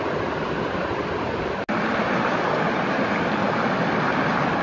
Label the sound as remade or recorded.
recorded